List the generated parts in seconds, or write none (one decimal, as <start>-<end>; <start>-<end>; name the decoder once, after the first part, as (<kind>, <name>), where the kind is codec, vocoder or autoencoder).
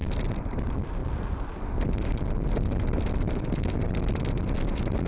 none